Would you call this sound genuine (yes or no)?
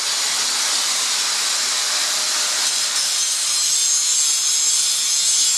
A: yes